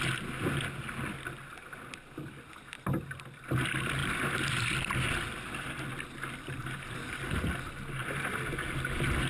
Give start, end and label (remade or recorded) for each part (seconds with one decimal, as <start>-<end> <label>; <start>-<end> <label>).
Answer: 0.0-9.3 recorded

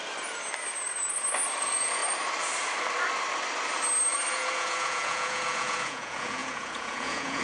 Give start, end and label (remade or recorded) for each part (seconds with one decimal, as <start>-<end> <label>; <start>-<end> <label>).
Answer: 0.0-1.6 recorded; 1.6-2.0 remade; 2.0-4.3 recorded; 4.3-7.4 remade

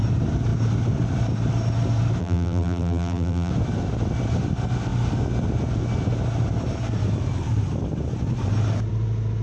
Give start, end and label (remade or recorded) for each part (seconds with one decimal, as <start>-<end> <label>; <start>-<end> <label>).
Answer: 0.0-2.2 recorded; 2.2-3.5 remade; 3.5-9.4 recorded

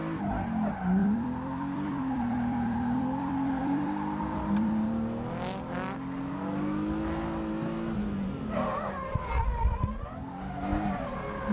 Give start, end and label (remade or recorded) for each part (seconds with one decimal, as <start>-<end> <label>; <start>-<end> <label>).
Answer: 0.0-1.0 recorded; 1.0-5.3 remade; 5.3-11.5 recorded

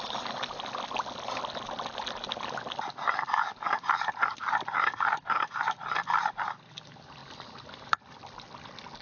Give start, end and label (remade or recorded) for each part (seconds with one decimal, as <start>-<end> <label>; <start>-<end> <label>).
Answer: 0.0-9.0 recorded

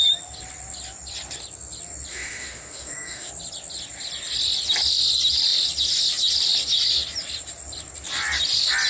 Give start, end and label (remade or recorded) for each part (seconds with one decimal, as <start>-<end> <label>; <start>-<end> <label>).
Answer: 0.0-2.1 recorded; 2.1-3.3 remade; 3.3-8.9 recorded

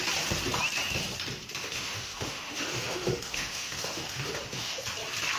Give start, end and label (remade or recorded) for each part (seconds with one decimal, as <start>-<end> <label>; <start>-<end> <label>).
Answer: 0.0-1.6 recorded; 1.6-4.8 remade; 4.8-5.4 recorded